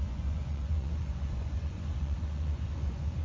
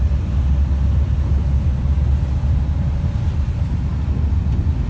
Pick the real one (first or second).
second